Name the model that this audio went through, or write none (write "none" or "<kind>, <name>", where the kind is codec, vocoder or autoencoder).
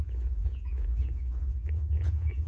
vocoder, Vocos